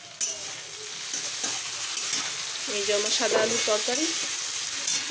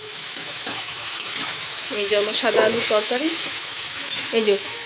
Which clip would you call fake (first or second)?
second